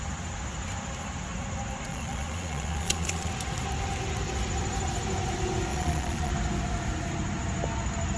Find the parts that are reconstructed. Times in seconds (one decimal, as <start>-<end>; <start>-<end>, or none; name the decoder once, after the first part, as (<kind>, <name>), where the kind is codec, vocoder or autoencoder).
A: 1.9-3.3 (vocoder, Vocos); 5.7-6.3